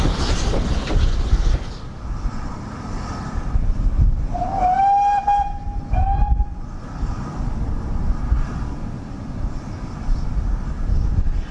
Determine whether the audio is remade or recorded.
recorded